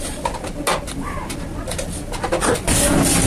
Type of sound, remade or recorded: recorded